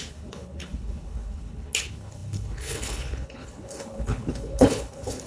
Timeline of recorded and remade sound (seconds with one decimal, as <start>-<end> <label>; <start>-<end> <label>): 0.0-5.3 remade